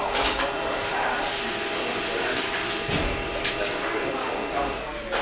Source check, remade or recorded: remade